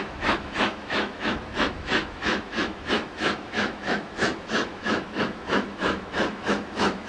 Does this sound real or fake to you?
fake